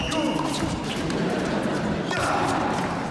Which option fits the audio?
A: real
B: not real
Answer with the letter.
A